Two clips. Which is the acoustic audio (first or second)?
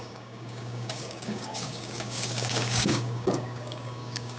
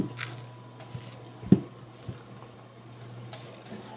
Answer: second